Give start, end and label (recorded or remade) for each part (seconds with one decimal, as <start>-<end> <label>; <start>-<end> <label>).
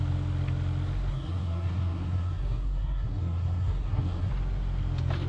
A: 0.0-1.1 recorded; 1.1-4.3 remade; 4.3-5.3 recorded